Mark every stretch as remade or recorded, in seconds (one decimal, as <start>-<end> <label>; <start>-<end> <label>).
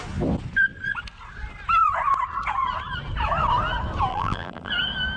0.0-4.1 recorded; 4.1-4.7 remade; 4.7-5.2 recorded